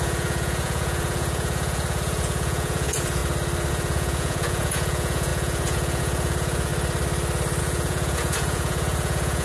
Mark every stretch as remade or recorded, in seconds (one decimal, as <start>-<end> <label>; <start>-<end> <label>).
0.0-3.2 remade; 3.2-3.7 recorded; 3.7-6.7 remade; 6.7-7.6 recorded; 7.6-9.4 remade